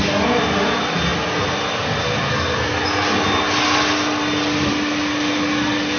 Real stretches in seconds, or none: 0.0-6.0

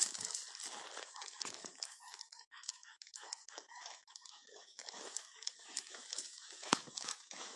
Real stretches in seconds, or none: 0.4-1.0